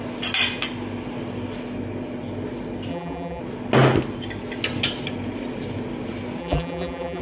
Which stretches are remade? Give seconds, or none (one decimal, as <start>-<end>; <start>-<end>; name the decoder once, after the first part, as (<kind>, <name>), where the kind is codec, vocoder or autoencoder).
2.9-3.4 (vocoder, BigVGAN v2); 6.4-7.2